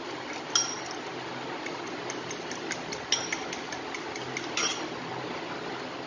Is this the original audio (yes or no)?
yes